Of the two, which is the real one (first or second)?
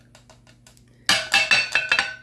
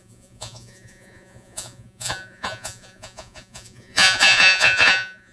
first